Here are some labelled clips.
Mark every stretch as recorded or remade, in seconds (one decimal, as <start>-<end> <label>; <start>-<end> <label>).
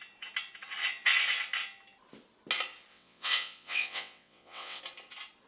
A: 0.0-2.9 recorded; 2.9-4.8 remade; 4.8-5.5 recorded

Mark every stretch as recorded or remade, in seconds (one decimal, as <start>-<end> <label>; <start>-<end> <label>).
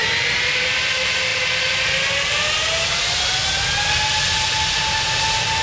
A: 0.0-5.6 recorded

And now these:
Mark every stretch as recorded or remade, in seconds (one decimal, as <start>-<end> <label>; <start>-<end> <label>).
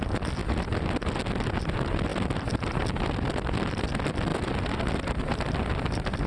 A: 0.0-6.3 recorded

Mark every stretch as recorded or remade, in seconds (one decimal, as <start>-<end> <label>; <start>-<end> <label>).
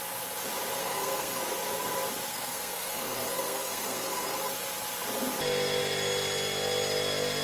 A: 0.0-0.8 recorded; 0.8-1.4 remade; 1.4-2.3 recorded; 2.3-4.5 remade; 4.5-7.4 recorded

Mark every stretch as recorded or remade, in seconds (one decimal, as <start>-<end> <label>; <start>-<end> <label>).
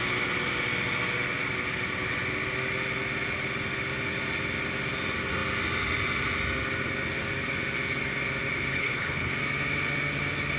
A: 0.0-8.7 recorded; 8.7-9.3 remade; 9.3-10.6 recorded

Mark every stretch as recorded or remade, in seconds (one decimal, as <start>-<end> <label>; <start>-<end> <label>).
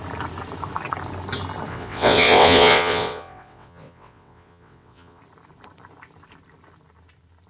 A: 0.0-1.7 recorded; 1.7-5.2 remade; 5.2-7.5 recorded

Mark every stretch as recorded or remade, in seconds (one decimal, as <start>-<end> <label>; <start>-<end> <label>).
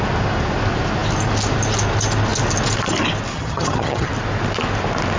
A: 0.0-3.3 recorded; 3.3-4.1 remade; 4.1-5.2 recorded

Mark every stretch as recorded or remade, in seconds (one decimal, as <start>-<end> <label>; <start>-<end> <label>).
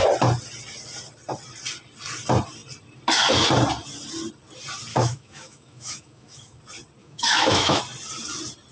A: 0.0-4.9 recorded; 4.9-6.6 remade; 6.6-7.0 recorded; 7.0-7.8 remade; 7.8-8.7 recorded